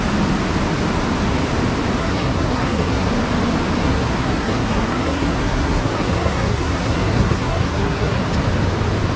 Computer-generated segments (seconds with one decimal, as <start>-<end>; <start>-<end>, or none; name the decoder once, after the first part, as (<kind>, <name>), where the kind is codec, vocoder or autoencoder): 2.0-3.1 (codec, SNAC); 3.8-8.2